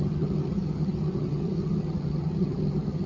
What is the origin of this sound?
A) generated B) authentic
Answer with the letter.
A